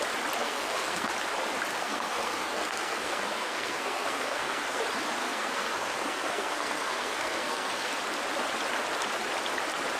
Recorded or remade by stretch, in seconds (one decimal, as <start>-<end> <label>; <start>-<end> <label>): 0.0-0.4 recorded; 0.4-1.1 remade; 1.1-1.7 recorded; 1.7-4.8 remade; 4.8-5.2 recorded; 5.2-8.0 remade; 8.0-10.0 recorded